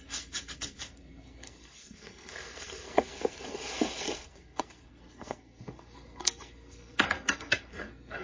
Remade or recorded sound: remade